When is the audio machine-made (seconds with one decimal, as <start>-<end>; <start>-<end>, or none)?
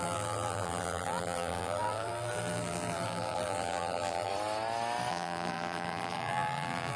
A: 0.0-4.3; 5.1-7.0